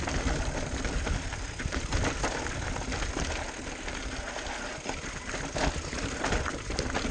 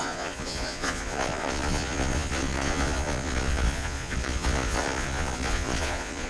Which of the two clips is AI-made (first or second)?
second